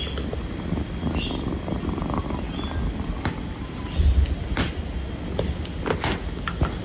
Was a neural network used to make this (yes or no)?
no